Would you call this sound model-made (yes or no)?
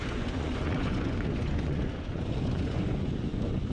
yes